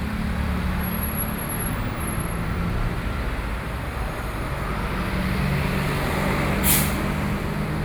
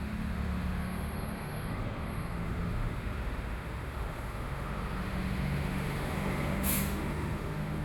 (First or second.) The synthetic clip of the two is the second